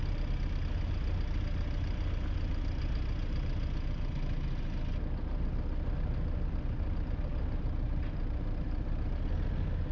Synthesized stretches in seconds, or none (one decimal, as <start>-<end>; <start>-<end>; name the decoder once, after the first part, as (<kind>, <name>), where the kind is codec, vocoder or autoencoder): none